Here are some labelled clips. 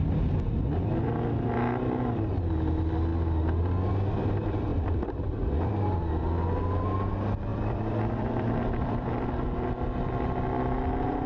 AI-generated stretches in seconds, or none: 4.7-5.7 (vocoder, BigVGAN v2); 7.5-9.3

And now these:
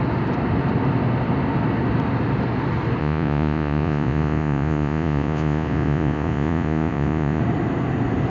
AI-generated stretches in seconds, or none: 3.0-7.4 (vocoder, Vocos)

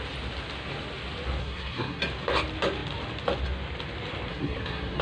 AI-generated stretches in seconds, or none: 1.4-2.0 (codec, SNAC); 4.3-5.0

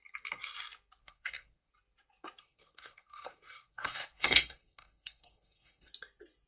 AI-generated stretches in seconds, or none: 1.0-1.7 (codec, SNAC); 2.4-5.9

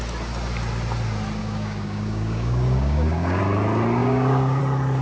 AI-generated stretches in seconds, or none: 1.4-3.4 (codec, DAC); 4.0-4.6